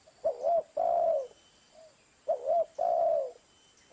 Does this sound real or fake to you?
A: real